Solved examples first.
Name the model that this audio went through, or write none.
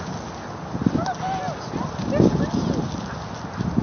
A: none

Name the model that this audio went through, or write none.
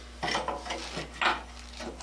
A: none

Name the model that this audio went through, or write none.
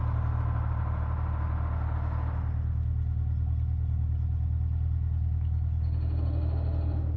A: none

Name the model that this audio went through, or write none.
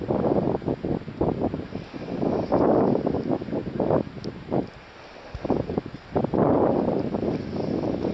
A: none